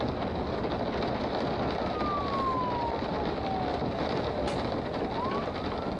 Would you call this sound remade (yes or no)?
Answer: no